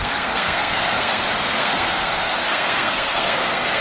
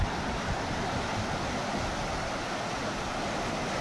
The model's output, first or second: first